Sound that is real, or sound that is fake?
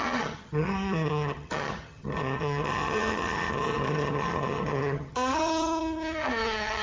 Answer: fake